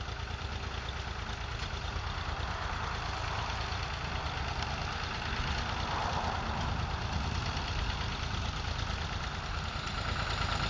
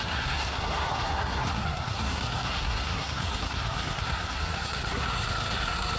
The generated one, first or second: second